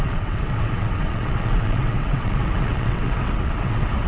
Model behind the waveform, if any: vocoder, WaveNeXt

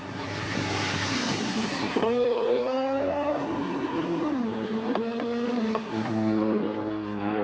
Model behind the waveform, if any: codec, SNAC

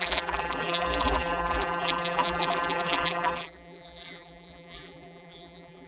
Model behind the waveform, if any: vocoder, BigVGAN v2